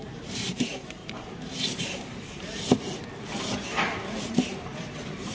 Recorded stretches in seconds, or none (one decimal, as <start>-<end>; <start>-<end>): 1.0-4.2